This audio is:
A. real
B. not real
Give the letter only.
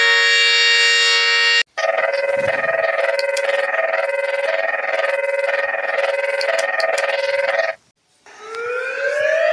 A